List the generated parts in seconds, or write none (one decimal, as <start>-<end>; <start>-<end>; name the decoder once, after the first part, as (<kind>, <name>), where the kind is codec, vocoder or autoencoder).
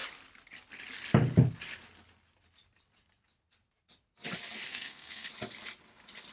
4.7-5.3 (codec, SNAC)